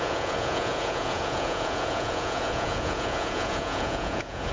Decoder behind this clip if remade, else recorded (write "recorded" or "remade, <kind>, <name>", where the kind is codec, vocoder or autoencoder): remade, vocoder, Vocos